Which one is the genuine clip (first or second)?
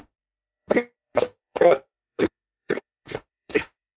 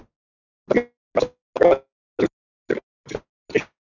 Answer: second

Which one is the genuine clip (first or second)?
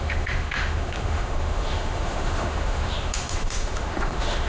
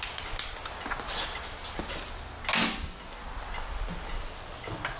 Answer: second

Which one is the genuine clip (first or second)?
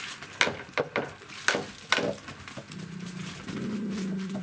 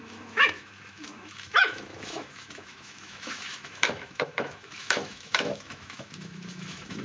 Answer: first